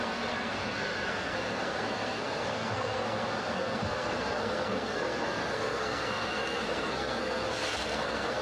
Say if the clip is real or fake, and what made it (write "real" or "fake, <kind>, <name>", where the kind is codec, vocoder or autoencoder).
fake, codec, SNAC